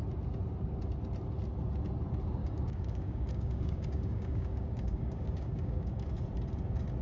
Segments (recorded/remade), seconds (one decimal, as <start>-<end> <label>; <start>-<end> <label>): 0.0-2.4 recorded; 2.4-5.9 remade; 5.9-7.0 recorded